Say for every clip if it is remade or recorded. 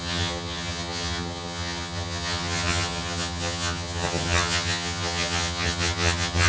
remade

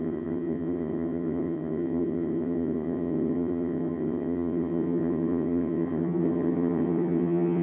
remade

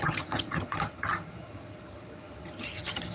remade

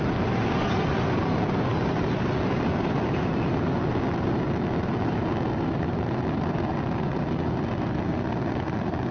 recorded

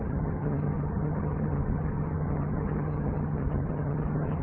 remade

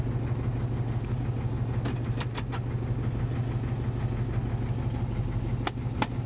recorded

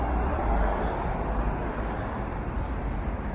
recorded